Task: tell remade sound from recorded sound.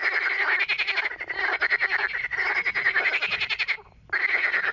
recorded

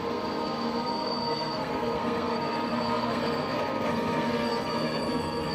remade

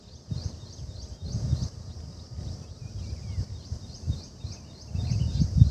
recorded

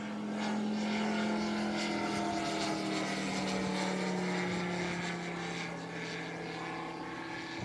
recorded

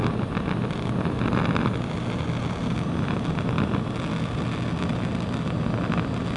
recorded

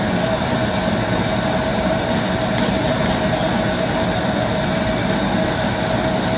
recorded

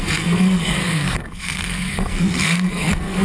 remade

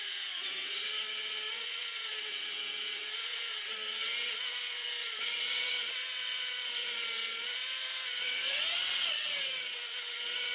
remade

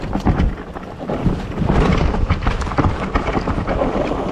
recorded